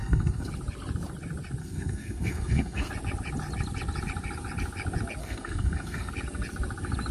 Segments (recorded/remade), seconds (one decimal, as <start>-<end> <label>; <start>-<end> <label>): 0.0-0.5 remade; 0.5-1.6 recorded; 1.6-2.9 remade; 2.9-5.2 recorded; 5.2-6.1 remade; 6.1-7.1 recorded